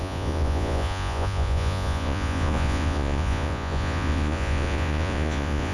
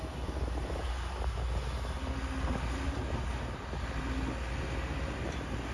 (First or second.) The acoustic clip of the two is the second